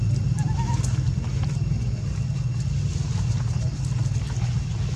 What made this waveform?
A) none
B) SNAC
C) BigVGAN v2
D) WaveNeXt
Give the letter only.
A